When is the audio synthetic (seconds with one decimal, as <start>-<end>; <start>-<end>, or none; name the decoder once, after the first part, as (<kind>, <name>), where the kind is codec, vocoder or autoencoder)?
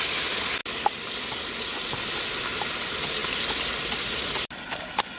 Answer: none